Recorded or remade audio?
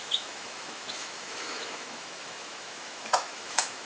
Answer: remade